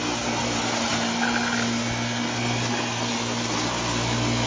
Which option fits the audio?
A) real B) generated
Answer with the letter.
A